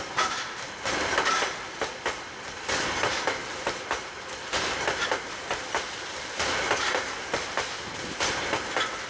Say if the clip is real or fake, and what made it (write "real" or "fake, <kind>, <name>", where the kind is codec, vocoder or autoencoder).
real